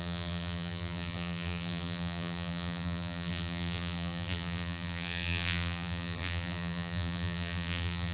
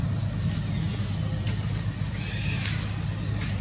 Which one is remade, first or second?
first